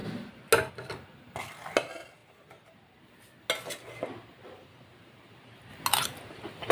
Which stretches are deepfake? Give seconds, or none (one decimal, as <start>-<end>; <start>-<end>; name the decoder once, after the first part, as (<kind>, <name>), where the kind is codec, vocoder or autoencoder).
none